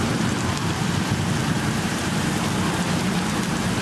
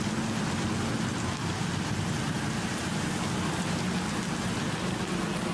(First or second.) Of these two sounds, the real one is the second